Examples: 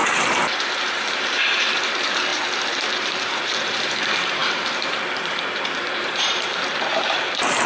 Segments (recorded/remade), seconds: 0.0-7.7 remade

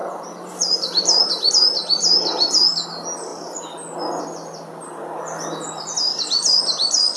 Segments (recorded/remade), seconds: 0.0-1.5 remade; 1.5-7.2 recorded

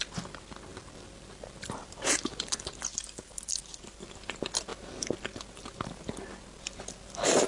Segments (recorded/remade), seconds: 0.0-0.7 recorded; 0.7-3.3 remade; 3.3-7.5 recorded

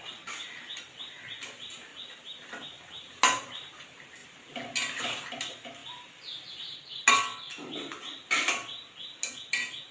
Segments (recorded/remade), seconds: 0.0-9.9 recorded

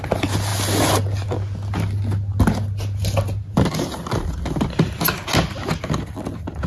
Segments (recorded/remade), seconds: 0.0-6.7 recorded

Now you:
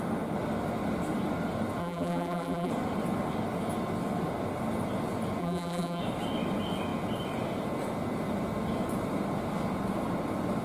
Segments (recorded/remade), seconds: 0.0-1.8 recorded; 1.8-2.7 remade; 2.7-5.4 recorded; 5.4-6.0 remade; 6.0-10.6 recorded